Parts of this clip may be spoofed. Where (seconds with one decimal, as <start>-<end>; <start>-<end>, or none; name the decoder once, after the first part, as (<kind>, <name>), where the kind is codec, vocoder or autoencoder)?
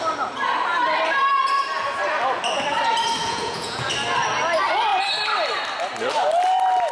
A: 3.2-3.9 (vocoder, Vocos)